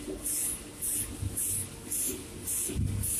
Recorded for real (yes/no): yes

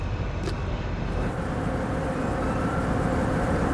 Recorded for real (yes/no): yes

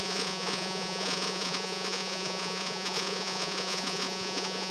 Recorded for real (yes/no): no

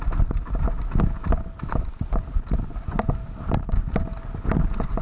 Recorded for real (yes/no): yes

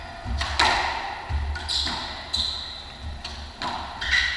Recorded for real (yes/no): yes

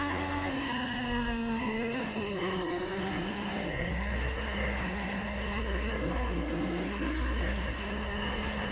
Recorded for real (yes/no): no